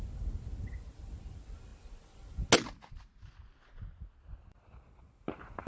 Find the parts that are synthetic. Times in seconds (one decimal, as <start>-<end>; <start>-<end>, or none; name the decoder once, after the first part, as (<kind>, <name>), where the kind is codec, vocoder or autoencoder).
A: none